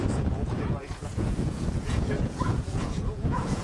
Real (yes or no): no